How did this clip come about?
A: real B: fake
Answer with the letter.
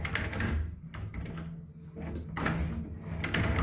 A